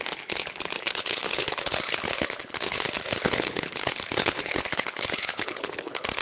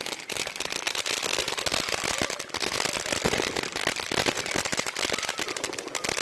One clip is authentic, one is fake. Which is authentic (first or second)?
second